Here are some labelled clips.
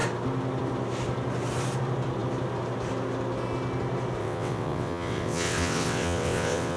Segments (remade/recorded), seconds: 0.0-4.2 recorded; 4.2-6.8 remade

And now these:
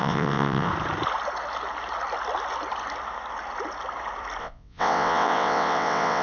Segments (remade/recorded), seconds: 0.0-0.7 remade; 0.7-4.4 recorded; 4.4-6.2 remade

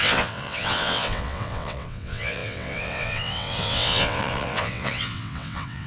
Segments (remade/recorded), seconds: 0.0-5.9 remade